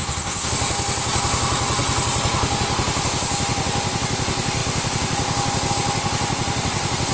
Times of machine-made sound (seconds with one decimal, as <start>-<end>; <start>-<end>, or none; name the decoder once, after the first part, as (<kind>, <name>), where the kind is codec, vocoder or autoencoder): 0.0-0.5 (codec, SNAC)